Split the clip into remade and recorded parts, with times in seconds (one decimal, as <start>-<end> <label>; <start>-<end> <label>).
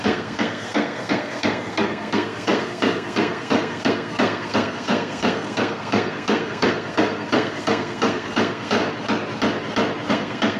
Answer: 0.0-8.8 remade; 8.8-10.1 recorded; 10.1-10.6 remade